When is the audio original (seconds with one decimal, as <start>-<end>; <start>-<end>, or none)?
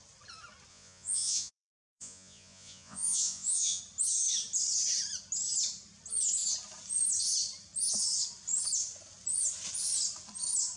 0.0-0.7; 3.8-10.8